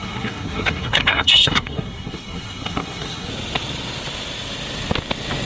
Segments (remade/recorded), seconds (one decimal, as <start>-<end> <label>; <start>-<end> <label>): 0.0-3.3 remade; 3.3-5.5 recorded